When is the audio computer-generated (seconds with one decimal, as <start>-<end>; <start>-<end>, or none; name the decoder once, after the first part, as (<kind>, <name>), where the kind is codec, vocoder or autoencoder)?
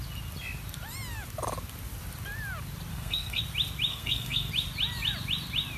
2.9-3.4 (codec, SNAC); 3.9-4.5